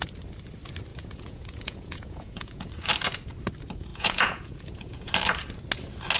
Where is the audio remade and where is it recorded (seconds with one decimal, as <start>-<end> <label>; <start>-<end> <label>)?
0.0-0.9 recorded; 0.9-2.7 remade; 2.7-3.9 recorded; 3.9-5.1 remade; 5.1-6.2 recorded